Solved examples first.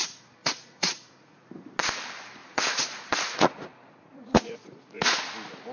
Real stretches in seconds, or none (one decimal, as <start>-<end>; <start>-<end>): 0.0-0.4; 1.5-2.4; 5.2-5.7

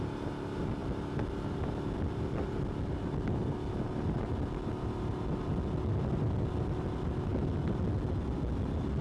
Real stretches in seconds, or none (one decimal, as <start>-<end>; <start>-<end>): 0.0-9.0

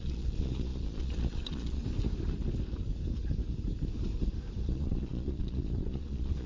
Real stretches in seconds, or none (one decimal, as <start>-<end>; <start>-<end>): 1.8-4.6